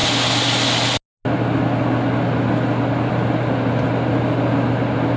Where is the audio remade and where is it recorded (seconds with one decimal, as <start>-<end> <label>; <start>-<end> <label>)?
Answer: 0.0-5.2 recorded